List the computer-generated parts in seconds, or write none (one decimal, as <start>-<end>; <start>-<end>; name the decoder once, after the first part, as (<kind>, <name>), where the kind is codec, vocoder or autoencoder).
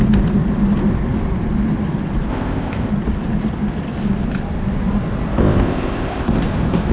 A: 2.3-2.9 (codec, ZipCodec); 5.4-6.3